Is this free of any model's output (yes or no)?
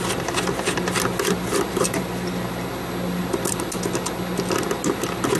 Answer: yes